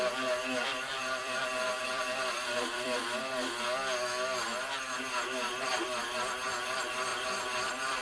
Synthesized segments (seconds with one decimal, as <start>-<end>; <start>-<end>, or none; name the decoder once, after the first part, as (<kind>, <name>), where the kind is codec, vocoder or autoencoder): 0.9-1.4 (vocoder, BigVGAN v2); 1.8-3.2; 7.1-8.0